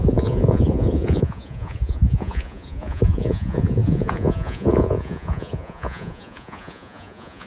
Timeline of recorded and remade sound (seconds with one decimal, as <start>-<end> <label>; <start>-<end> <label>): 0.0-7.5 remade